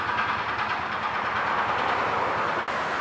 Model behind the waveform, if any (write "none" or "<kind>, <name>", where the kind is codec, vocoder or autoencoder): none